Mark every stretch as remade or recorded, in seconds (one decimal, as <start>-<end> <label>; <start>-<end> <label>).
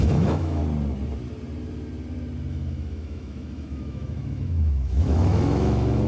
0.0-0.6 remade; 0.6-2.5 recorded; 2.5-6.1 remade